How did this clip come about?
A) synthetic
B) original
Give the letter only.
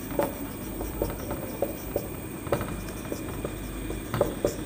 A